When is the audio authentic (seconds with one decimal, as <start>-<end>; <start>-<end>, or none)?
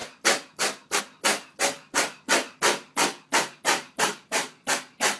0.0-3.3; 4.7-5.2